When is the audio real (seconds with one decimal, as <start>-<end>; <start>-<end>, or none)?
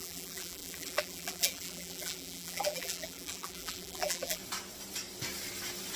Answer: 4.4-6.0